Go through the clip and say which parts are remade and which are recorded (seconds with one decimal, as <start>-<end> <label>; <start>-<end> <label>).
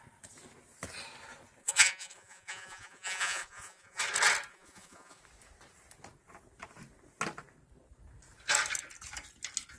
0.0-1.6 recorded; 1.6-4.0 remade; 4.0-4.5 recorded; 4.5-5.2 remade; 5.2-9.8 recorded